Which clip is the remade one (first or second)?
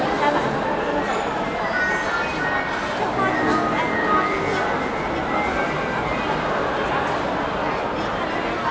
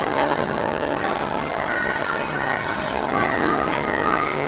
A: second